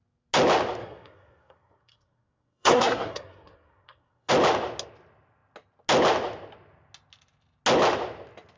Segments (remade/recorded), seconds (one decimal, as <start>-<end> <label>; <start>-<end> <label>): 0.0-0.8 recorded; 0.8-4.3 remade; 4.3-8.6 recorded